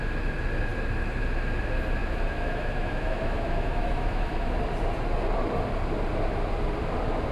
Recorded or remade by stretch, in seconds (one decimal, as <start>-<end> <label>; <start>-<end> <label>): 0.0-2.0 recorded; 2.0-4.6 remade; 4.6-7.3 recorded